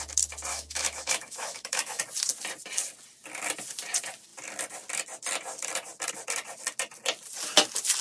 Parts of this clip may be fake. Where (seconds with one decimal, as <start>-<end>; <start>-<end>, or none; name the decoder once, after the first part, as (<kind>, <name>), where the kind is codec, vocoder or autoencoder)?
0.5-2.0 (autoencoder, DAC-VAE)